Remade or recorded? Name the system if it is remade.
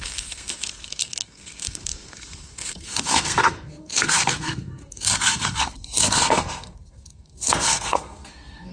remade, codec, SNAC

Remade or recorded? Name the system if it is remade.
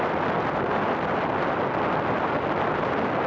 recorded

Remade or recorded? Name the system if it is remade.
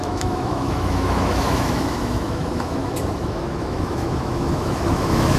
remade, autoencoder, DAC-VAE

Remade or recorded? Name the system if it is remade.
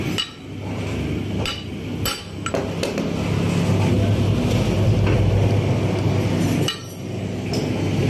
recorded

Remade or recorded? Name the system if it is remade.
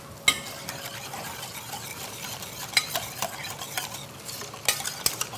recorded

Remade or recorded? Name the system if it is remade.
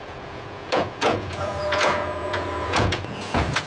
remade, vocoder, Vocos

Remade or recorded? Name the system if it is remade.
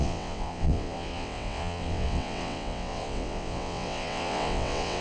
remade, vocoder, WaveNeXt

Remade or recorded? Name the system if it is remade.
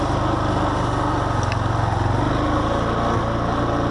recorded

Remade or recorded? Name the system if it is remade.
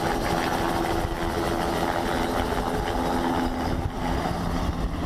recorded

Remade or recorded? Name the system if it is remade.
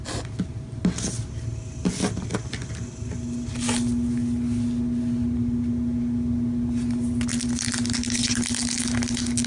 recorded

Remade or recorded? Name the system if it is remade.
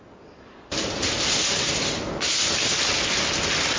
recorded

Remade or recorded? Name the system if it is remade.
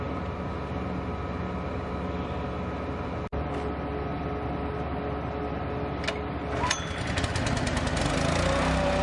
recorded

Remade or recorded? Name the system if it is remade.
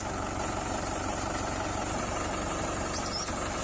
recorded